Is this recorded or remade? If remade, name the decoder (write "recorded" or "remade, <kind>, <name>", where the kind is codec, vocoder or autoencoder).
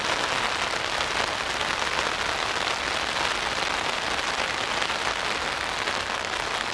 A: recorded